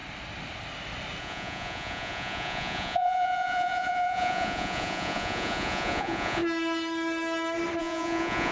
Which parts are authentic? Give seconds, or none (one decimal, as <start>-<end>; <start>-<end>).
0.0-1.2; 6.4-7.8